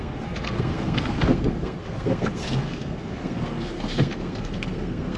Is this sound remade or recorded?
remade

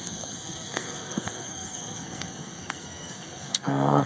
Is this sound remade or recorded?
remade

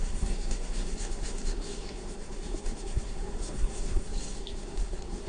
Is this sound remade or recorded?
remade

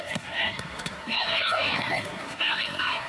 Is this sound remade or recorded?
remade